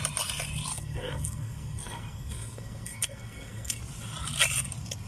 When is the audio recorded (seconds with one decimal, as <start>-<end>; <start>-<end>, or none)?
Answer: 0.0-0.7; 3.8-5.1